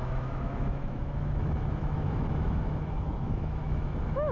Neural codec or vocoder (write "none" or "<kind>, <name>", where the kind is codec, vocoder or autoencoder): autoencoder, DAC-VAE